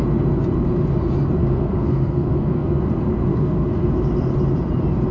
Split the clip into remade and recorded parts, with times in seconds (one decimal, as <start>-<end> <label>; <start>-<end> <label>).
0.0-1.4 recorded; 1.4-2.8 remade; 2.8-3.3 recorded; 3.3-3.9 remade; 3.9-5.1 recorded